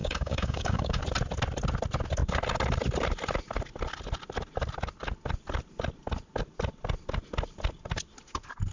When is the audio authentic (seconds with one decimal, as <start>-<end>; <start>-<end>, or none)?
1.0-8.7